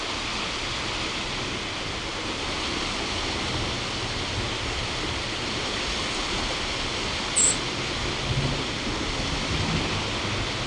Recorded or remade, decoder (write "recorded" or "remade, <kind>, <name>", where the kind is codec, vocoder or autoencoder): recorded